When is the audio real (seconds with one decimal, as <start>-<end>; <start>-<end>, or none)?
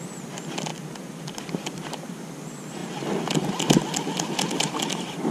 0.7-1.4; 2.8-4.8